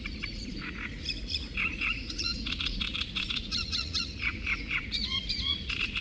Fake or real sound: fake